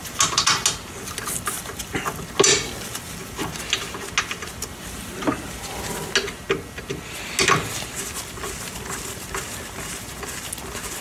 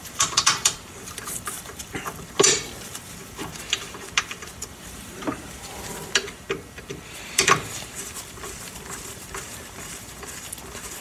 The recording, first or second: first